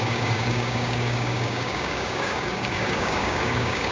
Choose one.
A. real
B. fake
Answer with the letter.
B